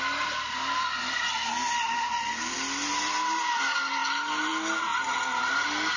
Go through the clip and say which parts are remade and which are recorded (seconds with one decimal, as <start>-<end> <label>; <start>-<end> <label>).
0.0-4.9 recorded; 4.9-5.5 remade; 5.5-6.0 recorded